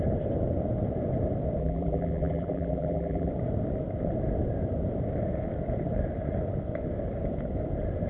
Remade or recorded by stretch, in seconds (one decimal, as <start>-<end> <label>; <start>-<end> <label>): 0.0-1.6 recorded; 1.6-3.3 remade; 3.3-8.1 recorded